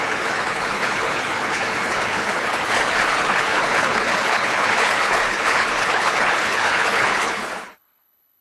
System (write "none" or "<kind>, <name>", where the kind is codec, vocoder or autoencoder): codec, HILCodec